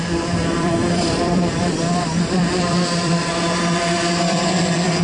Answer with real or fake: fake